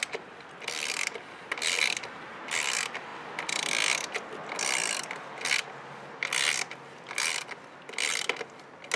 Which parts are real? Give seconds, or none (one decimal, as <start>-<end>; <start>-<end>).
0.0-9.0